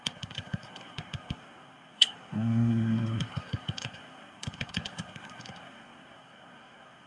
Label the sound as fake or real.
fake